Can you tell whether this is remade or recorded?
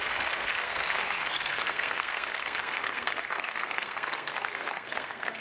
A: remade